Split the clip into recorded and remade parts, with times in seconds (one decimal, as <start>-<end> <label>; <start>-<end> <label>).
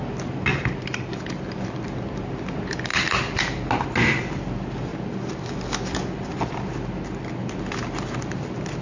0.0-8.8 recorded